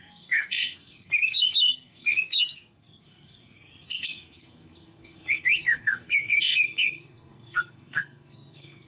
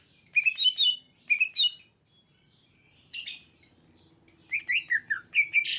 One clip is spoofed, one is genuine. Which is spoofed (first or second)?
first